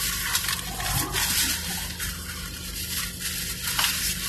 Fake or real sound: real